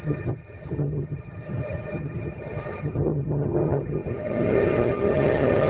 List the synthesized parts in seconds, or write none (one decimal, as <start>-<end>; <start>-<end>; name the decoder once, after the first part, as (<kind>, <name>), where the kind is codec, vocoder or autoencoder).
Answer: 0.0-5.7 (vocoder, HiFi-GAN)